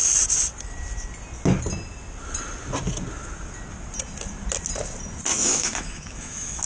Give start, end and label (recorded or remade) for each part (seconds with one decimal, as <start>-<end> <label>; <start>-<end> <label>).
0.0-5.3 recorded; 5.3-6.7 remade